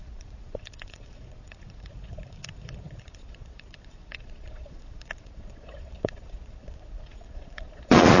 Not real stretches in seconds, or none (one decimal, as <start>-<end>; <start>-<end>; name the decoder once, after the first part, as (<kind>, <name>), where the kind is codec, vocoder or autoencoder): 0.0-8.2 (vocoder, Vocos)

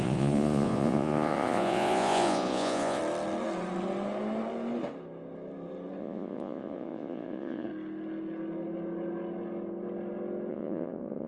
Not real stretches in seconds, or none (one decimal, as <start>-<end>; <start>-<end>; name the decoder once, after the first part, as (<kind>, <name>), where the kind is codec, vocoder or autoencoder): 0.0-3.0 (vocoder, Vocos); 6.0-7.7; 10.5-11.3

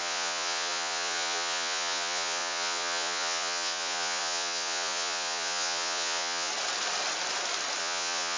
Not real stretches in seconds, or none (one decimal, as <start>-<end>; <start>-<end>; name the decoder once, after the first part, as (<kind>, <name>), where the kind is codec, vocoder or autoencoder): 0.0-6.5 (vocoder, Vocos); 7.8-8.4

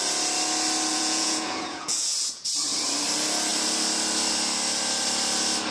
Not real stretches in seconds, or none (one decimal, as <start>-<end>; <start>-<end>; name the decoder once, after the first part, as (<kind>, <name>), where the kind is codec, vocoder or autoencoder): 0.9-2.5 (vocoder, Vocos)

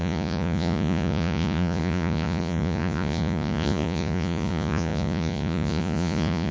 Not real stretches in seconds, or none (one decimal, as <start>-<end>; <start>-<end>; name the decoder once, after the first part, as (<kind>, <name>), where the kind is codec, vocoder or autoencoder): 0.0-6.5 (vocoder, Vocos)

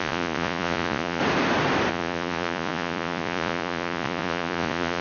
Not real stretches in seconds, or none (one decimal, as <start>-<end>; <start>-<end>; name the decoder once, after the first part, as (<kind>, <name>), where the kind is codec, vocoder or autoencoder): 0.0-1.2 (vocoder, Vocos); 1.9-5.0

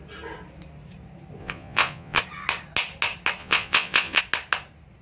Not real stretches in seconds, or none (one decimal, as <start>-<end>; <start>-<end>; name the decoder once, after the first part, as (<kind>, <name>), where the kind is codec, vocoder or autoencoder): 1.4-2.2 (vocoder, Vocos); 3.4-4.2

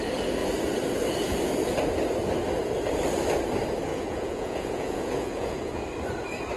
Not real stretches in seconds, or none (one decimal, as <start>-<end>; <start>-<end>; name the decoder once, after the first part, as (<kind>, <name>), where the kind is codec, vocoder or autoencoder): 3.9-5.8 (vocoder, Vocos)